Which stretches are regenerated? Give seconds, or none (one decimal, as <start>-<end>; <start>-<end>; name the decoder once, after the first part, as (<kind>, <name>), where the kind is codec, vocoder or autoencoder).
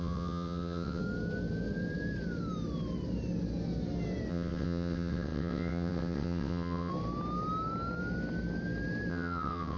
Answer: 0.0-1.0 (vocoder, WaveNeXt); 4.3-6.9; 9.1-9.8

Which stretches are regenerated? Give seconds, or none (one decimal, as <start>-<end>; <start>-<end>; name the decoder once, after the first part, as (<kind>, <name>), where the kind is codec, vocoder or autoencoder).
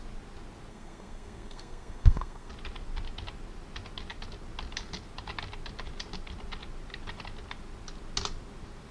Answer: 0.7-2.5 (codec, SNAC)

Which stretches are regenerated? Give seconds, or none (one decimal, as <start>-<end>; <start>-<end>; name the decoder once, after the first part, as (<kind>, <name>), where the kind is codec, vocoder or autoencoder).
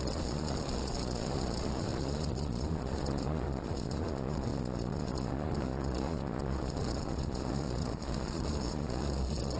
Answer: 0.0-9.6 (vocoder, Vocos)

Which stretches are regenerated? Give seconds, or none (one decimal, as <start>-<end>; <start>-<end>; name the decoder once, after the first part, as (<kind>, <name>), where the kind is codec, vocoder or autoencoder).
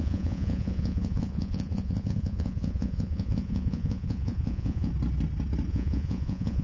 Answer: 0.0-4.9 (vocoder, Vocos); 5.7-6.6